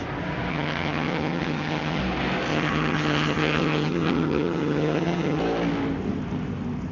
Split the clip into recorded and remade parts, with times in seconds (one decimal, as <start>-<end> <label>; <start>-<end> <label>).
0.0-0.5 recorded; 0.5-2.0 remade; 2.0-2.5 recorded; 2.5-5.4 remade; 5.4-6.9 recorded